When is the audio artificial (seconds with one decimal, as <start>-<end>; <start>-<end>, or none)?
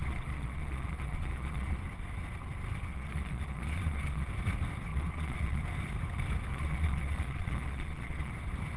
0.0-1.8; 2.9-4.3; 4.9-5.6; 6.5-8.3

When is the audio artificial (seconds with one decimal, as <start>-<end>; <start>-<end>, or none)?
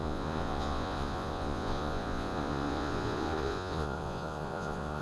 0.0-5.0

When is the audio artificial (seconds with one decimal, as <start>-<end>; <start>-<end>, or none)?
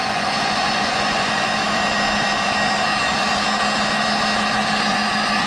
0.0-1.6; 4.9-5.5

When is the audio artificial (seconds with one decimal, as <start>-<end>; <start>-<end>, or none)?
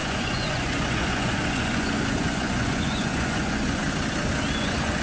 0.0-3.8; 4.5-5.0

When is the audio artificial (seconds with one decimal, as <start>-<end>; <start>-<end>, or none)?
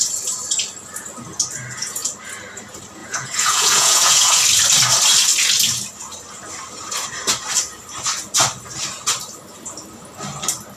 3.0-4.4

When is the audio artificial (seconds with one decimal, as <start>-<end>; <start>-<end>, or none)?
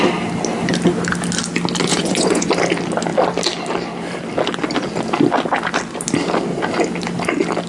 1.9-2.5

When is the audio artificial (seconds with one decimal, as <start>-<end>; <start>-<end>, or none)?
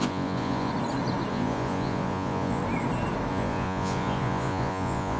0.0-0.7; 1.3-2.6; 3.3-5.2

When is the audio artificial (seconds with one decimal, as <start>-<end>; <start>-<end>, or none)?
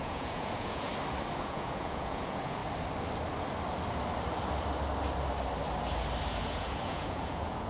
0.0-0.9; 1.4-2.6; 6.4-7.7